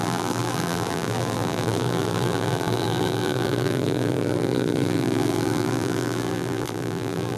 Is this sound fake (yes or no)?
yes